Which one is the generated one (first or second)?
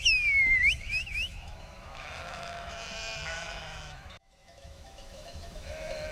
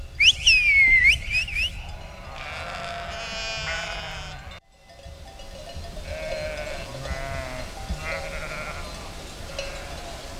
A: first